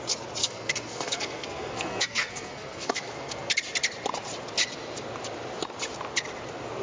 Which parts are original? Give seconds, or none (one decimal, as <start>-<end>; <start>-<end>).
0.0-0.4; 3.5-6.8